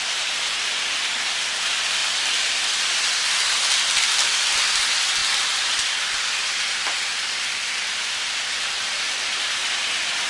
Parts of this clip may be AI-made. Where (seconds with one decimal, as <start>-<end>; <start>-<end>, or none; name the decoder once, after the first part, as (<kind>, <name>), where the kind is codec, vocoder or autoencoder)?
0.0-2.0 (vocoder, BigVGAN v2); 4.0-9.6